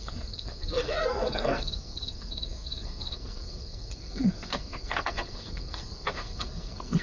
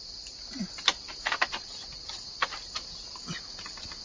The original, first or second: second